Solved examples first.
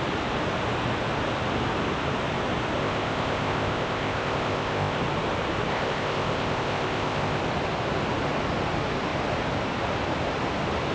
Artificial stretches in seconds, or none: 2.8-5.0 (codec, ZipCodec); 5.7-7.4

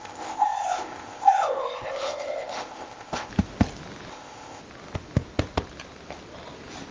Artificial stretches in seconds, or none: 0.0-3.3 (codec, ZipCodec); 4.1-4.6

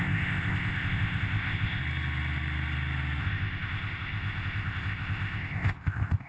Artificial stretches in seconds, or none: 0.0-1.8 (codec, ZipCodec); 3.2-6.3

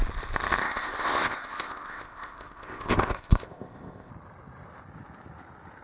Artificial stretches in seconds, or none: 0.6-4.1 (codec, ZipCodec)

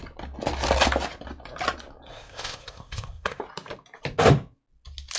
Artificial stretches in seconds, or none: 2.1-3.4 (codec, ZipCodec)

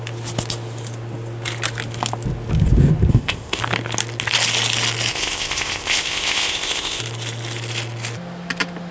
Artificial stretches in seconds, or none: 3.1-3.6 (codec, ZipCodec); 5.1-7.0

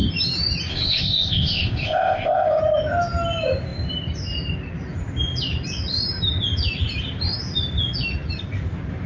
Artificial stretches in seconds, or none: 0.7-2.6 (codec, ZipCodec)